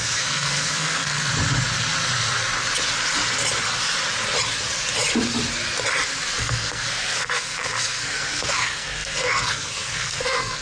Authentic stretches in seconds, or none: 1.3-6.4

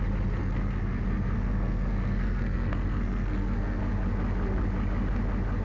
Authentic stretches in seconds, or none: 0.0-0.4; 3.8-5.6

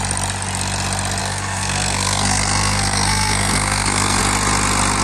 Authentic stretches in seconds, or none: 0.0-1.2; 4.2-5.0

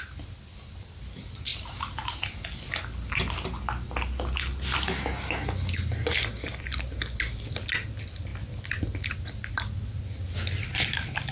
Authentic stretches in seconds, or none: 0.0-11.3

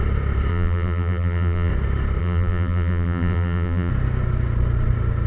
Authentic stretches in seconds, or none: 0.0-0.5; 1.7-2.2; 3.9-5.3

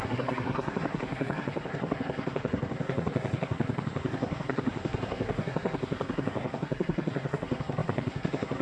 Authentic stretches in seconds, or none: none

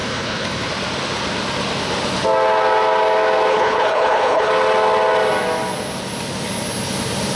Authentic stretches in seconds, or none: 0.7-3.5; 4.5-7.4

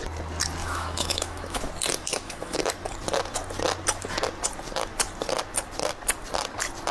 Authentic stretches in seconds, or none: 0.0-0.6; 1.7-2.1; 2.6-6.9